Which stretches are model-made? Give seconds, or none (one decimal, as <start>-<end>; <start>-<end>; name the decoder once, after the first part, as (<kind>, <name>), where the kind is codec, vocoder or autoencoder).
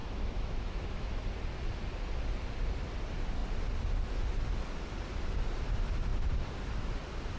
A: 0.0-1.2 (autoencoder, DAC-VAE)